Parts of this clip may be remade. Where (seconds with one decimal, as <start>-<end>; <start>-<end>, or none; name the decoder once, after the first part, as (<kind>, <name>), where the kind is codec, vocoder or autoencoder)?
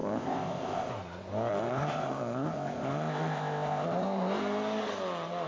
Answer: 0.0-0.9 (codec, ZipCodec); 1.5-4.4